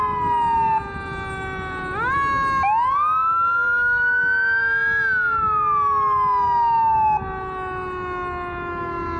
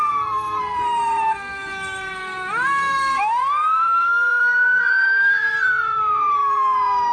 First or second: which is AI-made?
second